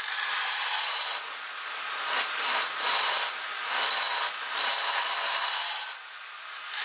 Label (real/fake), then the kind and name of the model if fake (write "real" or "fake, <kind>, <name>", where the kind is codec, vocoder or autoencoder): real